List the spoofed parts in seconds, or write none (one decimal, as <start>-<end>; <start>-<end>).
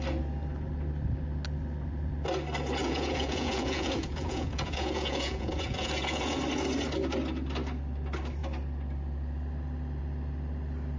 2.8-6.4